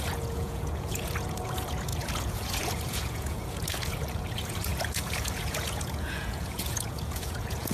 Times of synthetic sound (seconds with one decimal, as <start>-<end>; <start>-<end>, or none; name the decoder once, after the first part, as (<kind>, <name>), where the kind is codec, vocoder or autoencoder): 0.0-7.7 (vocoder, Vocos)